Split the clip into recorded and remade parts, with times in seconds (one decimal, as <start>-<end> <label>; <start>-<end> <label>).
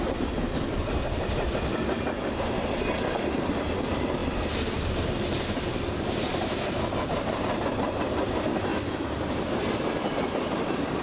0.0-11.0 recorded